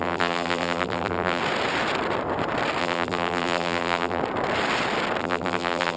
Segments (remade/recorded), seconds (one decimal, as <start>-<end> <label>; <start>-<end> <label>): 0.0-1.4 remade; 1.4-2.8 recorded; 2.8-4.2 remade; 4.2-5.2 recorded; 5.2-6.0 remade